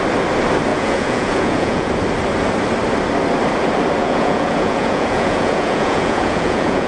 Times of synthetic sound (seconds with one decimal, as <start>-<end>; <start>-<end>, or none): 0.7-1.9; 4.0-6.9